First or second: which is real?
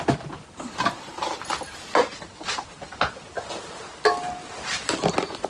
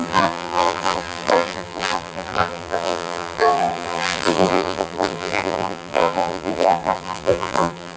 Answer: first